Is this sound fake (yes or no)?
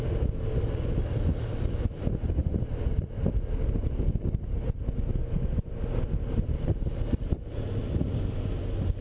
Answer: no